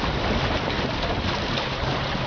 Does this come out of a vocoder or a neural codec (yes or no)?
no